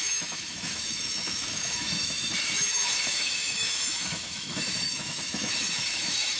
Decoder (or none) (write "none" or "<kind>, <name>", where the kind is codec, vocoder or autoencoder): autoencoder, DAC-VAE